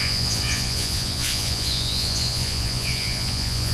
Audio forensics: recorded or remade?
remade